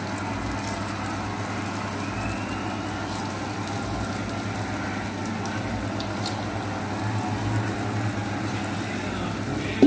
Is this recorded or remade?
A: recorded